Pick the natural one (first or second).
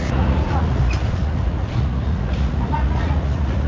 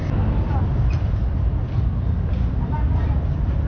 second